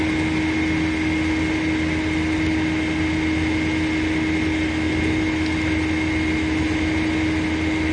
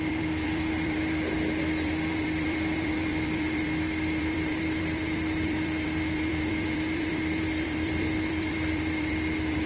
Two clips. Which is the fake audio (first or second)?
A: second